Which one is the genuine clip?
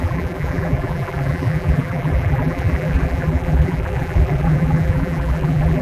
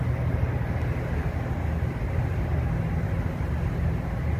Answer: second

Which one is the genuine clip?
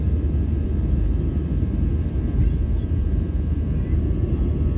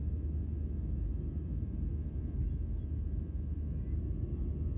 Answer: second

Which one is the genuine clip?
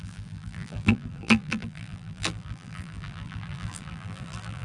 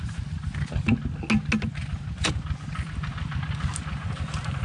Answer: second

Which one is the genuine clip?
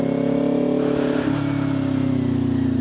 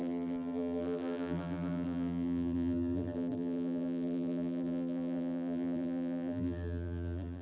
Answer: first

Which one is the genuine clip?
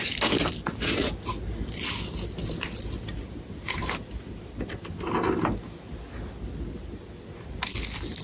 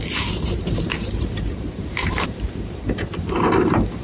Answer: first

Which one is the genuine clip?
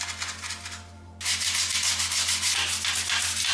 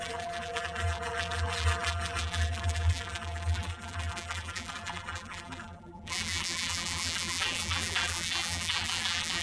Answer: first